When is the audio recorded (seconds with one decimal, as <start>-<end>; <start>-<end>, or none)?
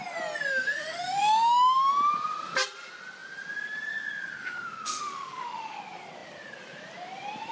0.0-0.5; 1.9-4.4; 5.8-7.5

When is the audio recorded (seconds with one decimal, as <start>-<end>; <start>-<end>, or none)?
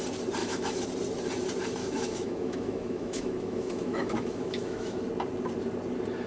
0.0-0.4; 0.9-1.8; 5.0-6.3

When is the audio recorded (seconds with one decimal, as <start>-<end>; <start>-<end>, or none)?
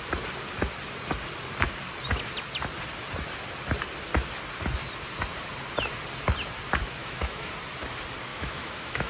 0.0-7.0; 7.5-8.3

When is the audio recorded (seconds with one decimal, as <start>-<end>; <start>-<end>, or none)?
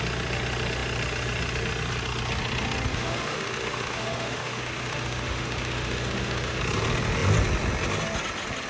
0.0-2.9; 6.6-8.7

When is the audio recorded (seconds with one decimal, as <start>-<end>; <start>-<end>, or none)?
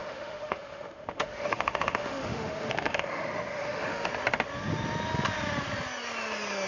4.1-6.7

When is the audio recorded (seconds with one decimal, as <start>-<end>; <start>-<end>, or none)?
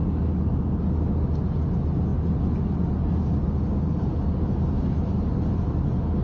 0.0-6.2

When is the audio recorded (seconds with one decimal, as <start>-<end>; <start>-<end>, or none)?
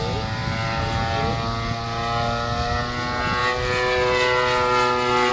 0.0-5.3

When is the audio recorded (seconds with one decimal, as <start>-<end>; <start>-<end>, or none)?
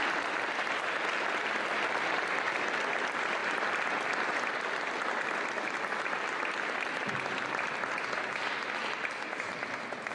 0.0-10.1